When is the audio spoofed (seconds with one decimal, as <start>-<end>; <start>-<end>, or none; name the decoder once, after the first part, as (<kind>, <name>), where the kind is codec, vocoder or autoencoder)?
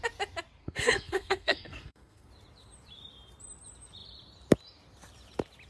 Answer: 0.6-2.3 (codec, SNAC)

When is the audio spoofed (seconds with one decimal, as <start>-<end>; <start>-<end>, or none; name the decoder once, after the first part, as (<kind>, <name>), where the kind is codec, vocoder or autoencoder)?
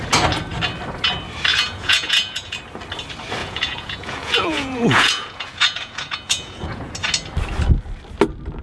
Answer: 1.5-2.6 (vocoder, Vocos); 3.4-6.9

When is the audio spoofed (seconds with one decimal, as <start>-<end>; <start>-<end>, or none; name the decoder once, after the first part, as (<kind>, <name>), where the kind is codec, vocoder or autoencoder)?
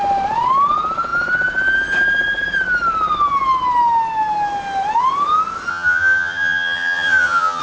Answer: 5.7-7.6 (vocoder, HiFi-GAN)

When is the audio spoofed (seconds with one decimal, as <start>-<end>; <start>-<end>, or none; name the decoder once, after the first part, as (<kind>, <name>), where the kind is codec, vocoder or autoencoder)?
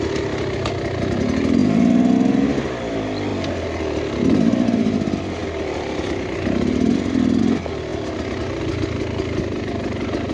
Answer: none